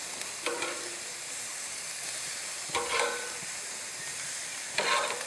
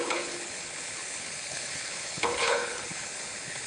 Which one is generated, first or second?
second